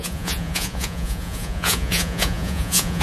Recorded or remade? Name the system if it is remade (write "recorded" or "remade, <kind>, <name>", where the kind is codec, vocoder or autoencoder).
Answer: remade, vocoder, Vocos